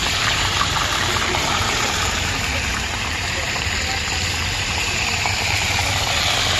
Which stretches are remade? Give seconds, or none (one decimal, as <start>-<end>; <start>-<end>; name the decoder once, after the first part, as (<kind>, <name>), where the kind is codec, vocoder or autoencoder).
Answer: 0.0-5.8 (vocoder, BigVGAN v2)